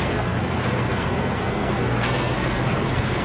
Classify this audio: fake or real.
fake